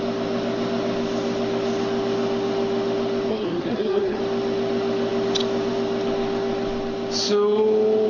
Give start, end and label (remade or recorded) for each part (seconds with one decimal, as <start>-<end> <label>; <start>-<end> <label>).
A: 0.0-3.3 recorded; 3.3-4.2 remade; 4.2-8.1 recorded